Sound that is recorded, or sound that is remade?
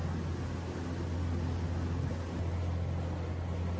recorded